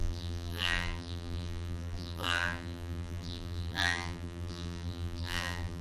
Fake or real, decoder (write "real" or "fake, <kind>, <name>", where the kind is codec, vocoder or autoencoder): fake, vocoder, BigVGAN v2